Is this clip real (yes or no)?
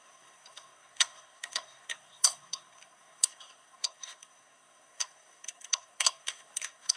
no